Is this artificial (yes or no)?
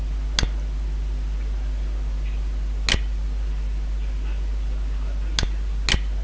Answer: no